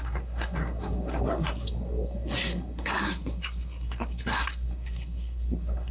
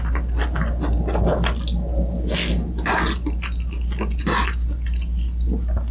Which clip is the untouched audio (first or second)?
second